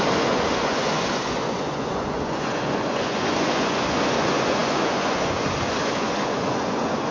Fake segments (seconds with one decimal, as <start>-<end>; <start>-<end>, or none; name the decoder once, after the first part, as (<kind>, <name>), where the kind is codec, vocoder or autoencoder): 0.0-7.1 (vocoder, Vocos)